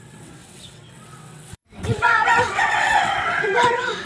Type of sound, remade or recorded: remade